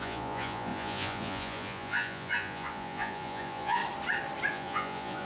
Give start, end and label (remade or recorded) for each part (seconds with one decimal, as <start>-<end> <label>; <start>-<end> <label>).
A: 0.0-3.8 remade; 3.8-4.5 recorded; 4.5-5.2 remade